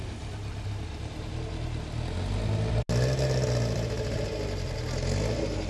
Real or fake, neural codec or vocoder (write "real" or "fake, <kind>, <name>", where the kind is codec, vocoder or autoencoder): real